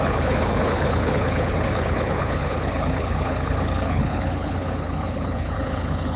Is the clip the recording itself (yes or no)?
no